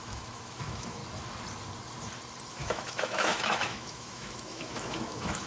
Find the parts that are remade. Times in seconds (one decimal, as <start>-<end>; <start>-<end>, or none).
0.0-1.0; 2.5-5.5